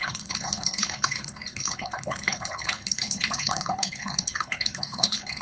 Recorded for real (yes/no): no